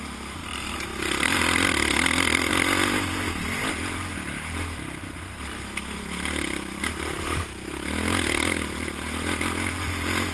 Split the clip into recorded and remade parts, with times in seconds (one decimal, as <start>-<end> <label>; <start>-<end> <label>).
0.0-10.3 recorded